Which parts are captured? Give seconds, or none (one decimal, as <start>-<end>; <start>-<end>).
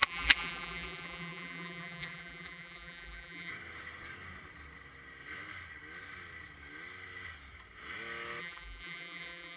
3.5-8.4